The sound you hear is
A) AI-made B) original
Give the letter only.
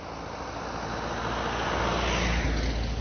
B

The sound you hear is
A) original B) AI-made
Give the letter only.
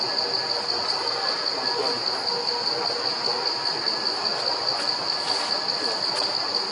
A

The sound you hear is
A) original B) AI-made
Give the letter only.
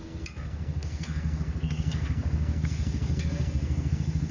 B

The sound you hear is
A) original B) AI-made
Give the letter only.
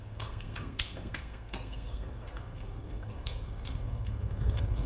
B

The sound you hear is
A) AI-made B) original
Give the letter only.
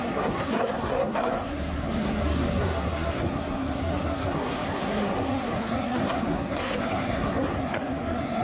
A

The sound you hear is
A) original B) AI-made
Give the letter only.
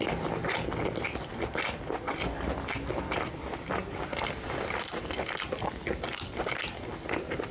A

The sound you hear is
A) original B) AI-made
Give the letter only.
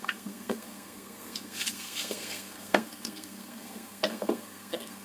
B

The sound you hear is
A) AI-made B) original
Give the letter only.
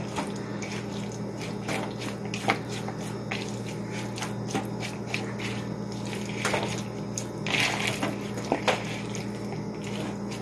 B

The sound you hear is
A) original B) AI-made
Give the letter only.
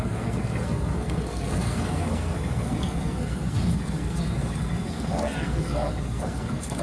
B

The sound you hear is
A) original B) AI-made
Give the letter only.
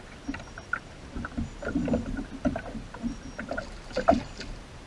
A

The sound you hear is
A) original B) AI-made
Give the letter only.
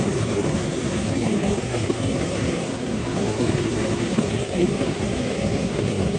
B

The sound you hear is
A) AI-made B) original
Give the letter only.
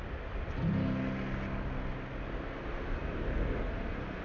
B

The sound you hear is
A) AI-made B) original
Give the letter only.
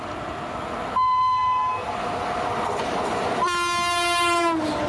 B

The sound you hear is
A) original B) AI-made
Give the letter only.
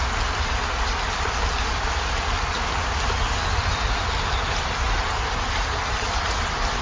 A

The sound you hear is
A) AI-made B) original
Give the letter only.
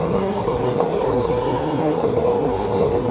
A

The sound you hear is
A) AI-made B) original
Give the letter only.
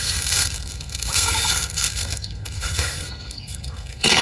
A